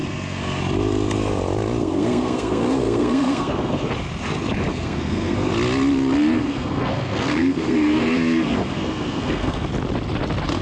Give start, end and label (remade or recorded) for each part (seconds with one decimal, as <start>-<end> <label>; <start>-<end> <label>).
0.0-0.6 remade; 0.6-1.8 recorded; 1.8-3.9 remade; 3.9-4.7 recorded; 4.7-5.5 remade; 5.5-6.4 recorded; 6.4-9.7 remade; 9.7-10.6 recorded